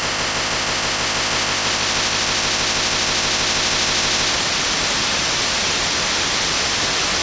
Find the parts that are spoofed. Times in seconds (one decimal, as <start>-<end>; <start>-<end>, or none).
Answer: 0.0-4.3